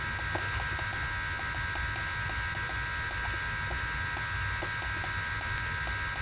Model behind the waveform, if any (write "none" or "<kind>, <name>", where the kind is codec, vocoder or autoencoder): none